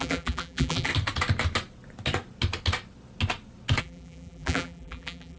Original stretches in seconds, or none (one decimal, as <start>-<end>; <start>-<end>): 0.9-3.8